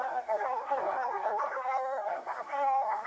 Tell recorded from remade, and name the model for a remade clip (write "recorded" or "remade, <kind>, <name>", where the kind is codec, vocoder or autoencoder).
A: remade, codec, SNAC